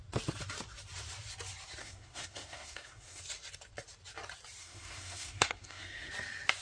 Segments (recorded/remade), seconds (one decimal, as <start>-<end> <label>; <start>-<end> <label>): 0.0-1.8 recorded; 1.8-3.2 remade; 3.2-4.6 recorded; 4.6-6.1 remade; 6.1-6.6 recorded